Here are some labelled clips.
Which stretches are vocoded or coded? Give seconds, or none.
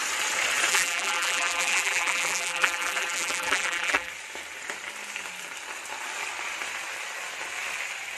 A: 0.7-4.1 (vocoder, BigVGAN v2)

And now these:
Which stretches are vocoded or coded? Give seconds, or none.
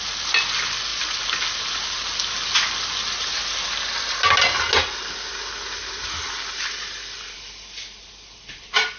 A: none